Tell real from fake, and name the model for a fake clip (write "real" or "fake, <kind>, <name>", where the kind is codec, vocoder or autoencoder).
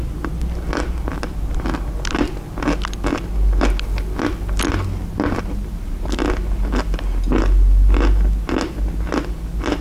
real